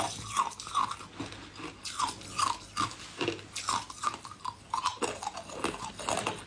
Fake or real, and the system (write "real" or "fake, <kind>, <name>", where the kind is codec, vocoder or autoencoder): real